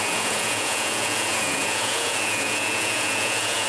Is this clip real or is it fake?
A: fake